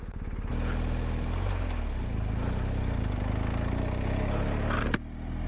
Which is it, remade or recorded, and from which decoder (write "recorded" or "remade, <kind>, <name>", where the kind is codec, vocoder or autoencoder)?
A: recorded